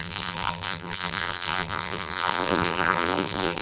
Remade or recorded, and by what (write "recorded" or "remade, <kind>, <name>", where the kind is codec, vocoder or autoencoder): remade, vocoder, BigVGAN v2